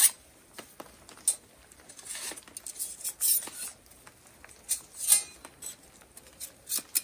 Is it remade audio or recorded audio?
recorded